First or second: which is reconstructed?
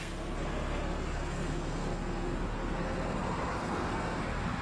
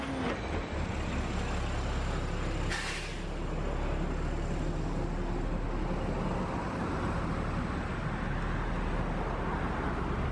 first